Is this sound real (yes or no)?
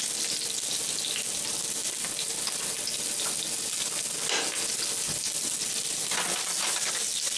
yes